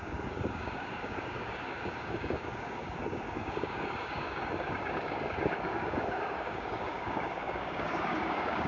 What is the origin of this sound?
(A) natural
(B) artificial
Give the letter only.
B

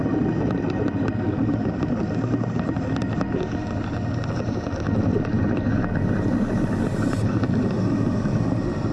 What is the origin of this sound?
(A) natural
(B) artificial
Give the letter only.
A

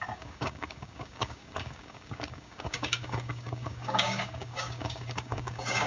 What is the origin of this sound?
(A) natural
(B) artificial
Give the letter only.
B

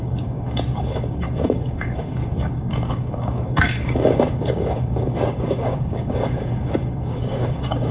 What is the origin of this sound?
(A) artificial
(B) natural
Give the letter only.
A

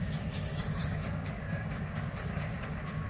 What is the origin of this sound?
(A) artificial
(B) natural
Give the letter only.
A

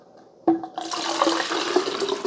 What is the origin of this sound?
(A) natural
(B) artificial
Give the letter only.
A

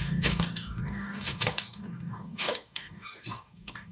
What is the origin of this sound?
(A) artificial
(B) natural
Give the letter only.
A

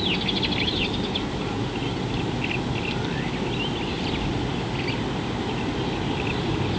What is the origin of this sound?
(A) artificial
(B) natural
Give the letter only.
B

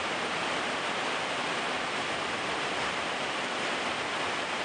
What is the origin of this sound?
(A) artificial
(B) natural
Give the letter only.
B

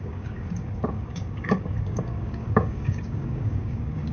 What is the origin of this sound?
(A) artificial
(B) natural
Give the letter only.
A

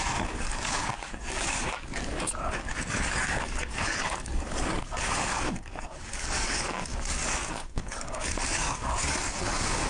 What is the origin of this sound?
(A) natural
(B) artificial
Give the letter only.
B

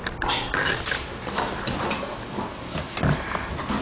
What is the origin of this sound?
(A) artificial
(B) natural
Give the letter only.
B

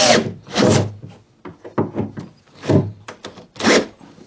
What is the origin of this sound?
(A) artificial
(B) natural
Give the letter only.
B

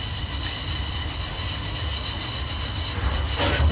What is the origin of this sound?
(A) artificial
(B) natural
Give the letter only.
B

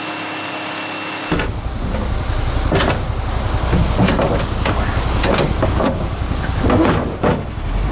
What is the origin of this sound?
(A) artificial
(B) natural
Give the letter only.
B